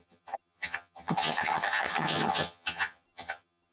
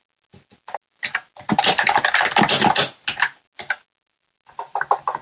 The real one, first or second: second